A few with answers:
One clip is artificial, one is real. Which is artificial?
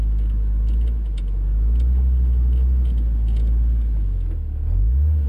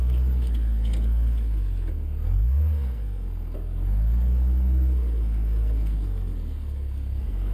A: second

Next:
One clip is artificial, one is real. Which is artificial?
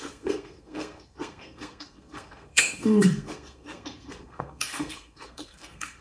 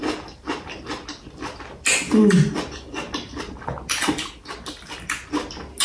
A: first